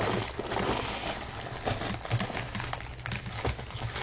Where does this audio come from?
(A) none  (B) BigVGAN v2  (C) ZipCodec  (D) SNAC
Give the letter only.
A